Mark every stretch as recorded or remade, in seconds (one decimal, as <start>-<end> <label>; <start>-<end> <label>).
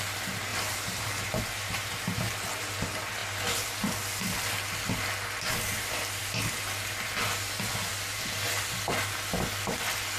0.0-0.5 recorded; 0.5-2.3 remade; 2.3-10.2 recorded